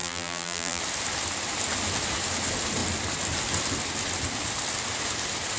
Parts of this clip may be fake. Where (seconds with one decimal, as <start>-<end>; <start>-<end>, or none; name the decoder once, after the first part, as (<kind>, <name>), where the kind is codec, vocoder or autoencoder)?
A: 0.0-0.8 (vocoder, BigVGAN v2)